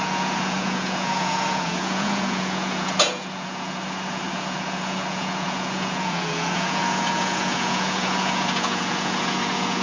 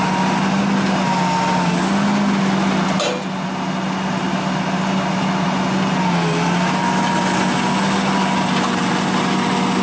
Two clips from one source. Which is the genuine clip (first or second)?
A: second